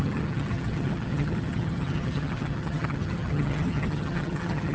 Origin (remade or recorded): remade